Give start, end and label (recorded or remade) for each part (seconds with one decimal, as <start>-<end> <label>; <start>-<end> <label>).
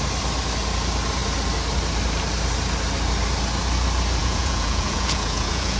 0.0-4.2 recorded; 4.2-5.8 remade